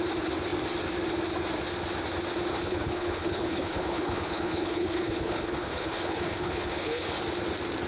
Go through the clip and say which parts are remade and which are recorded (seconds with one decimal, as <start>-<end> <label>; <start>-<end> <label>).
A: 0.0-2.5 recorded; 2.5-7.2 remade; 7.2-7.9 recorded